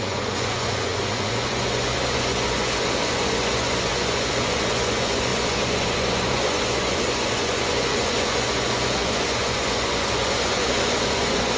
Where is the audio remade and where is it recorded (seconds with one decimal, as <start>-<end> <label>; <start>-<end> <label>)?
0.0-11.6 remade